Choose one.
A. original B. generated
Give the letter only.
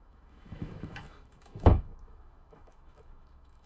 B